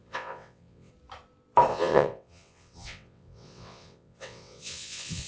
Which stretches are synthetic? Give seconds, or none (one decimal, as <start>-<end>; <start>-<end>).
0.0-0.9; 1.7-5.3